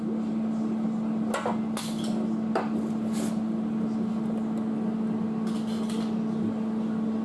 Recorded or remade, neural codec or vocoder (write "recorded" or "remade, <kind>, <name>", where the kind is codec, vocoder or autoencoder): recorded